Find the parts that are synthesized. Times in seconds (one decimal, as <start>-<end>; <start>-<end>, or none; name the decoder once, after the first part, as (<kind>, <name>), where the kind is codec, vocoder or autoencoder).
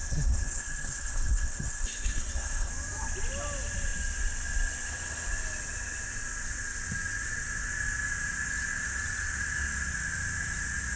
0.0-2.7 (codec, SNAC)